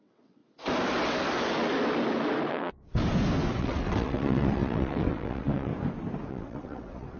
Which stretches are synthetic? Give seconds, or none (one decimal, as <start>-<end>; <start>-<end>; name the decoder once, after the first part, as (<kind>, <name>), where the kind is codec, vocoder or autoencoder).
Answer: 0.0-0.4 (vocoder, WaveNeXt); 2.5-3.0; 3.6-5.7; 6.3-7.2